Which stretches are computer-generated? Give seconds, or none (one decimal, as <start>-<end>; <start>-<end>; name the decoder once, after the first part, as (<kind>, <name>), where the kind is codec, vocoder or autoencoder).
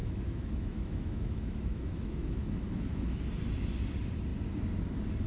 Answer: 0.0-3.2 (autoencoder, DAC-VAE)